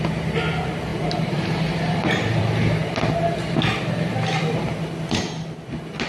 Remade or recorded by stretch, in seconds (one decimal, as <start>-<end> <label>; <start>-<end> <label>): 0.0-0.9 recorded; 0.9-2.4 remade; 2.4-6.1 recorded